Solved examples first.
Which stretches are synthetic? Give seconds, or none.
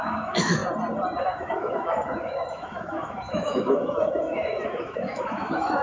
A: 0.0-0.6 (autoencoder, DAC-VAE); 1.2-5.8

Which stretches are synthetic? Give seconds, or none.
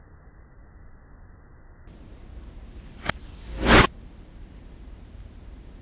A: none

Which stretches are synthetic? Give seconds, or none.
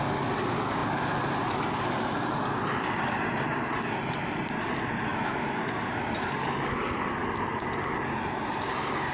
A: 5.1-5.6 (autoencoder, DAC-VAE)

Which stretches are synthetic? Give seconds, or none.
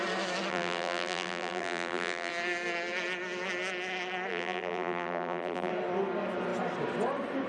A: 0.5-2.3 (vocoder, BigVGAN v2); 4.3-5.7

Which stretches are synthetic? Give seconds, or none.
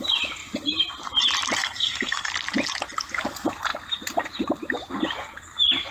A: 1.6-2.3 (codec, SNAC)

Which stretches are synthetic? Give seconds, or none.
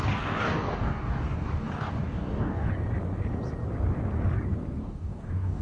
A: 0.0-2.7 (codec, DAC); 4.8-5.6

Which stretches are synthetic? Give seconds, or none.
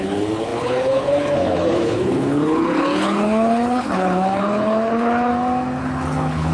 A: 0.0-5.3 (codec, HILCodec); 5.8-6.5